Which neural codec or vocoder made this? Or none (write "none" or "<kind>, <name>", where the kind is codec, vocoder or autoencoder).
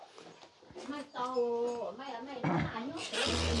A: none